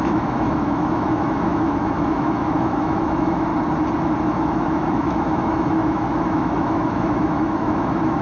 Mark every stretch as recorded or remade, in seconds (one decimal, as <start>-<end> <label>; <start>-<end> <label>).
0.0-3.5 remade; 3.5-4.2 recorded; 4.2-8.2 remade